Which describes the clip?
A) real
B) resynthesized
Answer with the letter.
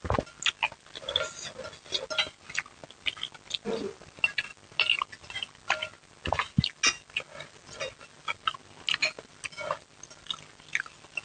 A